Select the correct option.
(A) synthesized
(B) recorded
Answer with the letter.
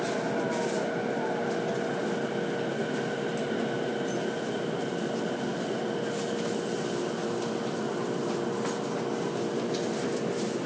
B